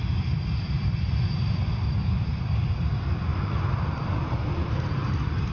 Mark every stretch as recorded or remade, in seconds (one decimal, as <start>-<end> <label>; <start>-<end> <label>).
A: 0.0-5.5 recorded